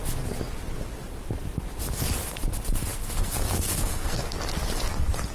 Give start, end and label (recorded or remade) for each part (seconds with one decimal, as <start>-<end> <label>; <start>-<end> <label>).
0.0-2.9 recorded; 2.9-4.3 remade; 4.3-5.3 recorded